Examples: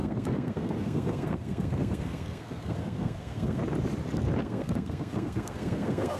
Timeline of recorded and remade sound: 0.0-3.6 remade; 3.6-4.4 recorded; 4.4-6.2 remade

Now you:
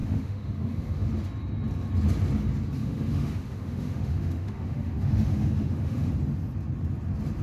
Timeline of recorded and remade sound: 0.0-1.1 remade; 1.1-2.8 recorded; 2.8-6.1 remade; 6.1-7.4 recorded